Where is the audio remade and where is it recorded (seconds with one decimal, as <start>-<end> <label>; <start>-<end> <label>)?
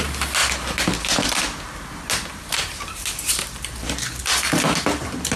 0.0-2.5 recorded; 2.5-4.2 remade; 4.2-5.4 recorded